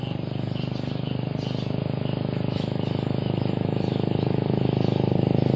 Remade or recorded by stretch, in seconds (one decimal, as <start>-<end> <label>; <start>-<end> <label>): 0.0-1.8 recorded; 1.8-5.1 remade; 5.1-5.6 recorded